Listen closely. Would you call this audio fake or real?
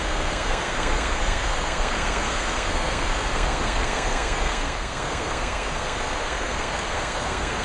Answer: fake